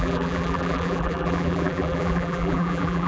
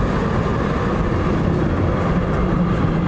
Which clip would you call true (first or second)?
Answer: second